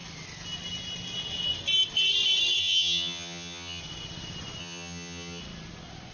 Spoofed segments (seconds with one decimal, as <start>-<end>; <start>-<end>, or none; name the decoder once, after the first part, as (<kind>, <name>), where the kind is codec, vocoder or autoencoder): 2.6-3.8 (vocoder, HiFi-GAN); 4.6-5.4